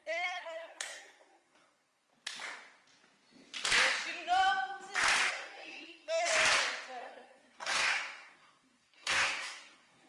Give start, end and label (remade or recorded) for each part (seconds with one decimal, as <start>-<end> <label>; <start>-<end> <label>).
0.0-2.1 remade; 2.1-5.3 recorded; 5.3-6.3 remade; 6.3-7.0 recorded; 7.0-10.1 remade

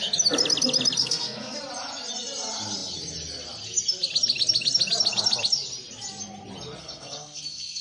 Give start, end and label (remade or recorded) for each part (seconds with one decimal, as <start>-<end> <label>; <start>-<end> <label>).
0.0-1.0 recorded; 1.0-1.6 remade; 1.6-6.8 recorded; 6.8-7.8 remade

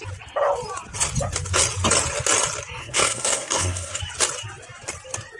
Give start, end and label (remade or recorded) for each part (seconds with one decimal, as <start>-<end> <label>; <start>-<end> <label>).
0.0-2.8 recorded; 2.8-4.0 remade; 4.0-5.4 recorded

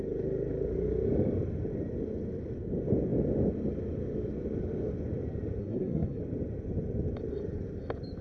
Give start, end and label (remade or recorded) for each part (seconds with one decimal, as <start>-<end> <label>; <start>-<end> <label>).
0.0-5.6 recorded; 5.6-6.2 remade; 6.2-8.2 recorded